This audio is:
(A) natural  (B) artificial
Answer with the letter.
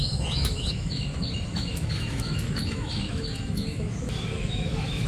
B